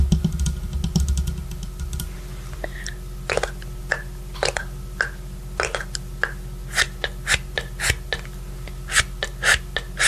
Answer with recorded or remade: recorded